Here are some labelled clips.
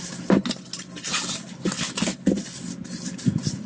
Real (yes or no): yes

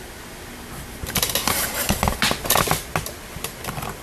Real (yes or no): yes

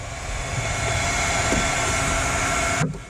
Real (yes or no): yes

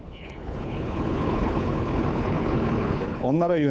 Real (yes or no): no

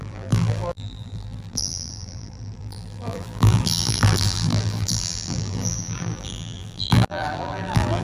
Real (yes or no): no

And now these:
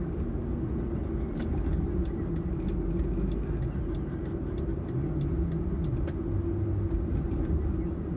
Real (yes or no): yes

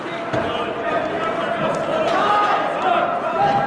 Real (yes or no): yes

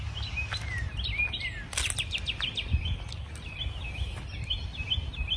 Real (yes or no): yes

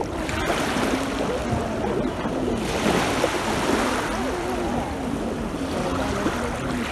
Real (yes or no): yes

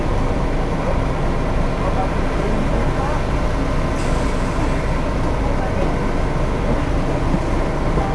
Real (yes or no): yes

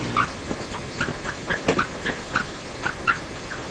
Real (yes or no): yes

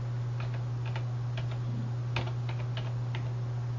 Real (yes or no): yes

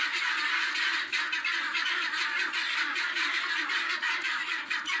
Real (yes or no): yes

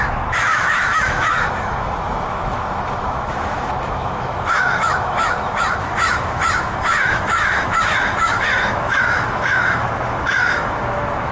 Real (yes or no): no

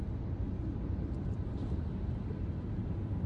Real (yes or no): yes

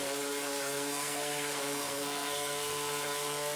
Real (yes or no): no